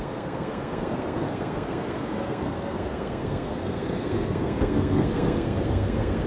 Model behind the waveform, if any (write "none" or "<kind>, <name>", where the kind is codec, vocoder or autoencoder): codec, SNAC